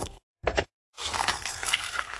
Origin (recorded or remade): remade